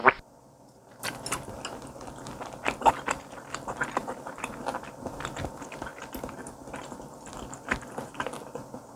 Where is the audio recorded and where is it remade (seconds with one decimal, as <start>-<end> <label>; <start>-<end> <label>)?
0.0-9.0 recorded